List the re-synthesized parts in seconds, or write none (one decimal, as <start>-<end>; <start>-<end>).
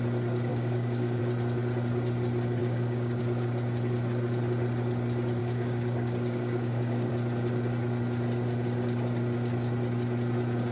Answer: 0.5-1.2; 2.6-3.2; 5.4-7.1